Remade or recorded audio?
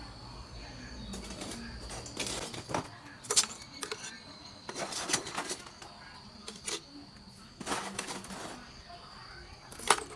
recorded